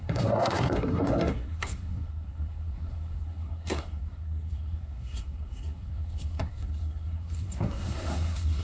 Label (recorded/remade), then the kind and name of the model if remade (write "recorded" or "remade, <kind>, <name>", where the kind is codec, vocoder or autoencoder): remade, codec, SNAC